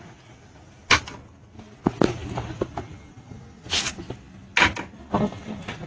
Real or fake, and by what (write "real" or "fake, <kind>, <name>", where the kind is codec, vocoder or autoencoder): real